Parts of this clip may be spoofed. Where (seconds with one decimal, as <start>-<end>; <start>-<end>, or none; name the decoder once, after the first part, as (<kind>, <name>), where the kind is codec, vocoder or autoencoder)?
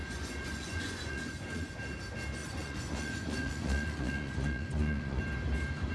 0.0-1.7 (vocoder, Vocos); 2.4-5.2